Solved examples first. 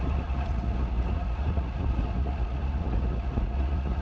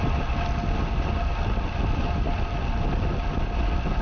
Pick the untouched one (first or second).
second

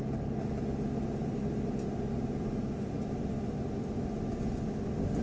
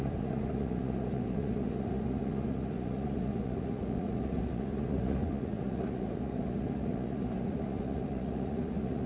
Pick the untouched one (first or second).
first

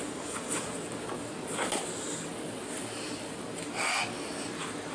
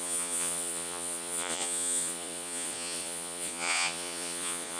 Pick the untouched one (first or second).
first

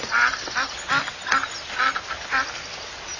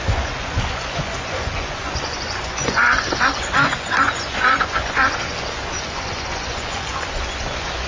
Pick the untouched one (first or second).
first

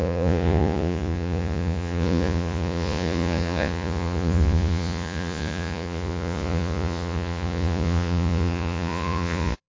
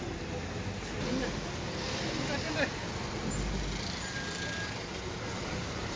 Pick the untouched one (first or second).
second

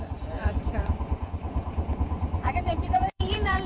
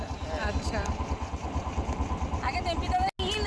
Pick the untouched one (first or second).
second